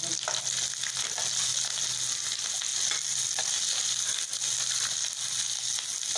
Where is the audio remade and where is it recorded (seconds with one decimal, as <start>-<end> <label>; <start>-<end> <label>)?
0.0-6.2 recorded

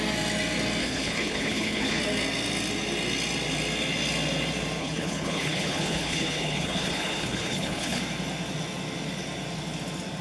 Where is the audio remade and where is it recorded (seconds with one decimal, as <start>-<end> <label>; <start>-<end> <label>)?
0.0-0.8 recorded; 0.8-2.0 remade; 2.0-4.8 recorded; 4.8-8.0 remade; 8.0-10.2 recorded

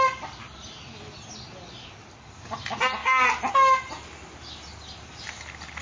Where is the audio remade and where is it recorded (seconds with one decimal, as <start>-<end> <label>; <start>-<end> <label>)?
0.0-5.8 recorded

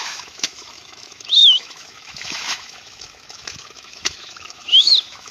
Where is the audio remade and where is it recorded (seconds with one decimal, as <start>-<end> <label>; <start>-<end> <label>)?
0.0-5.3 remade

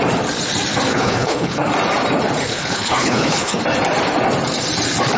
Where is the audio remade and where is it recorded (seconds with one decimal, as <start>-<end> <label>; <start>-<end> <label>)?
0.0-0.9 recorded; 0.9-1.7 remade; 1.7-2.4 recorded; 2.4-3.6 remade; 3.6-5.2 recorded

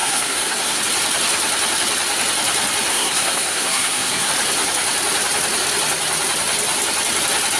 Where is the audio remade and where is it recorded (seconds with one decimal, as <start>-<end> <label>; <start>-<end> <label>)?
0.0-0.8 remade; 0.8-2.9 recorded; 2.9-4.3 remade; 4.3-7.6 recorded

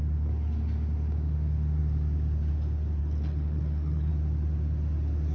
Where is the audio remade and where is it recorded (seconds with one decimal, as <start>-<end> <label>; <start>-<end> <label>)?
0.0-3.0 recorded; 3.0-4.1 remade; 4.1-5.3 recorded

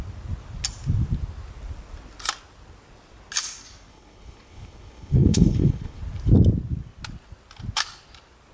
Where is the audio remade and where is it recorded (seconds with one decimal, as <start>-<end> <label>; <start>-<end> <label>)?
0.0-3.9 recorded; 3.9-6.0 remade; 6.0-8.5 recorded